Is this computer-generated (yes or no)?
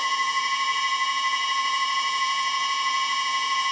yes